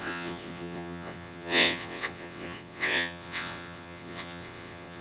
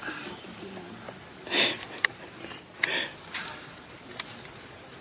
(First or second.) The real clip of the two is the second